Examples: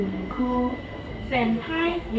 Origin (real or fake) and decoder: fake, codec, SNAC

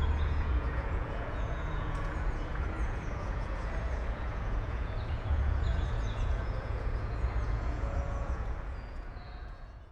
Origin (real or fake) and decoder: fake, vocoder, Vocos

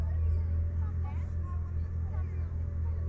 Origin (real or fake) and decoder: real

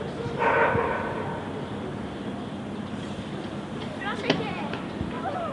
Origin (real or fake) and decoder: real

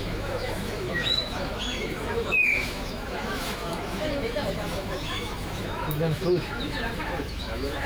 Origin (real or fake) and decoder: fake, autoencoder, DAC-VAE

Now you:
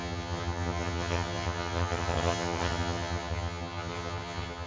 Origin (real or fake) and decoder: fake, vocoder, HiFi-GAN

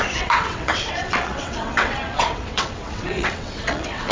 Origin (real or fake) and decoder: fake, vocoder, WaveNeXt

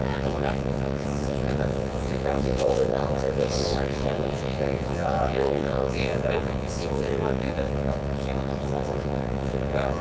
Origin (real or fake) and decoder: fake, vocoder, WaveNeXt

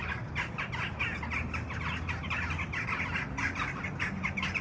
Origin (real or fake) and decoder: real